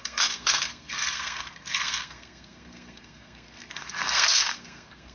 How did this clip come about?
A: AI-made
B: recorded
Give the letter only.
A